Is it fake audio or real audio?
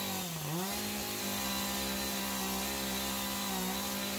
real